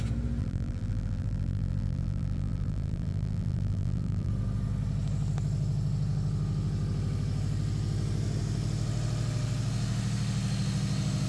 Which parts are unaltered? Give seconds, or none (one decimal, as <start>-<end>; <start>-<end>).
0.0-0.4; 4.3-11.3